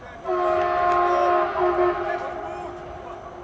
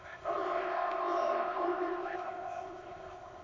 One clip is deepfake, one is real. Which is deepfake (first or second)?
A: second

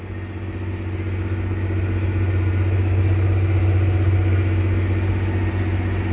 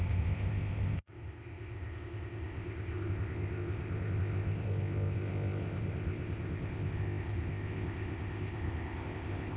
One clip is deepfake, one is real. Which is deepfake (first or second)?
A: second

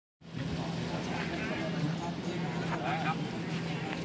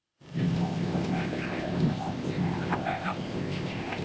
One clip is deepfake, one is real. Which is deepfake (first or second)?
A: second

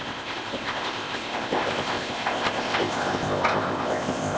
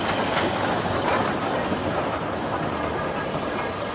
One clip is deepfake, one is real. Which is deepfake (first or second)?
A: first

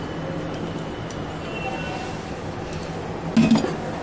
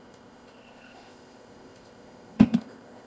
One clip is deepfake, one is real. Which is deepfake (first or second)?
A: second